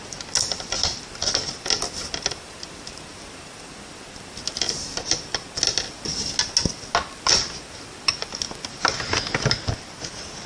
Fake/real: real